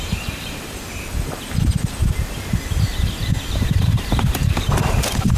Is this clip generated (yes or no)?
yes